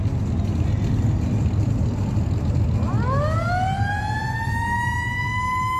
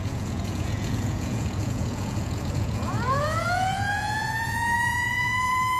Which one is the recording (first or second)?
first